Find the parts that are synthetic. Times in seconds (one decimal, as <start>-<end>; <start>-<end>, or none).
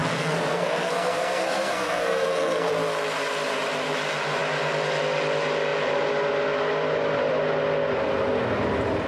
0.0-2.7